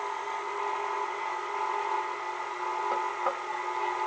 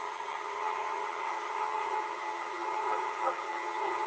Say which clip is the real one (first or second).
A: first